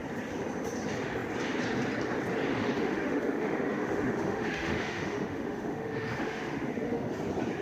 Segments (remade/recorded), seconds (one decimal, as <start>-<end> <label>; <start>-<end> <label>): 0.0-2.5 recorded; 2.5-7.1 remade; 7.1-7.6 recorded